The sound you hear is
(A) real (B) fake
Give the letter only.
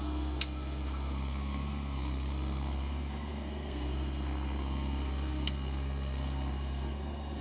B